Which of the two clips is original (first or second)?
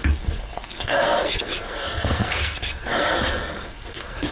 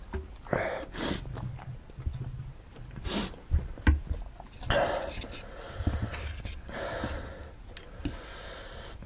second